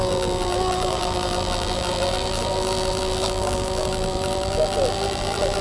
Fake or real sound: fake